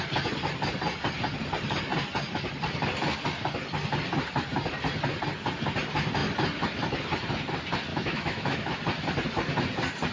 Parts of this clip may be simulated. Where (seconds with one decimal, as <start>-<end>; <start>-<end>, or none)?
7.9-8.8